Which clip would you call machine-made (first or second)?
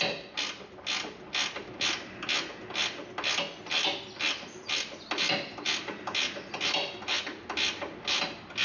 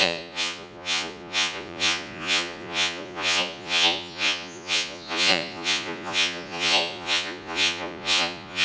second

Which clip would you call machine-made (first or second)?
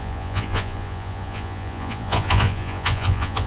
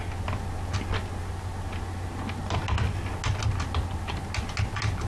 first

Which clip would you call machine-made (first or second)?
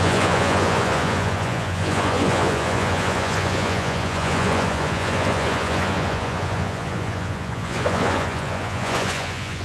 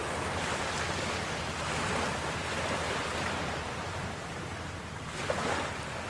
first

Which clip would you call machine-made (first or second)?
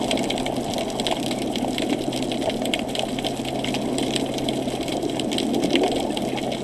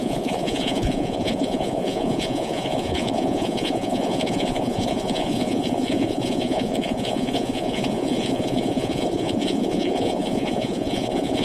second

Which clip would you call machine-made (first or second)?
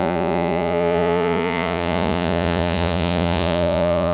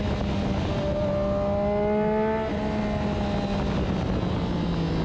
first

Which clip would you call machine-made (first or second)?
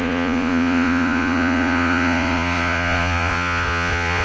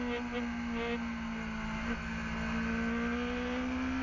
first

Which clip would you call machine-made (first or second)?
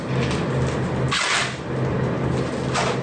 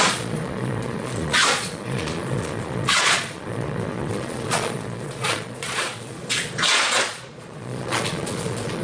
second